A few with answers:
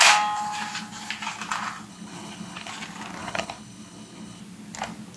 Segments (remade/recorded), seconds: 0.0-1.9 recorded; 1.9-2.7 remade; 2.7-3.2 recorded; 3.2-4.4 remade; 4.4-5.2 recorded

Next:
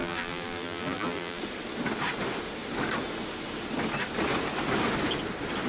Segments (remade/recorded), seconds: 0.0-1.4 remade; 1.4-5.7 recorded

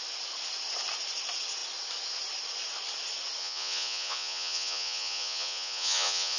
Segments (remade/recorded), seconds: 0.0-3.4 recorded; 3.4-6.4 remade

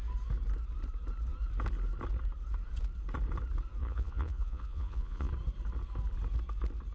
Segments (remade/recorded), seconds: 0.0-3.8 recorded; 3.8-5.3 remade; 5.3-6.9 recorded

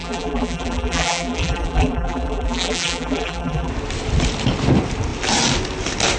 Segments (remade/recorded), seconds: 0.0-3.7 remade; 3.7-6.2 recorded

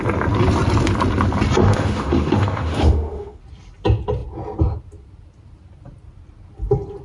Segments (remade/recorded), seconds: 0.0-1.6 recorded; 1.6-3.4 remade; 3.4-7.0 recorded

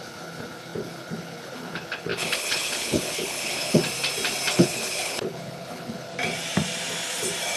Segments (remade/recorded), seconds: 0.0-3.8 remade; 3.8-4.5 recorded; 4.5-6.1 remade; 6.1-7.6 recorded